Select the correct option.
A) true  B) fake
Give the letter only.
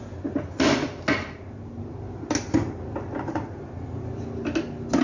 A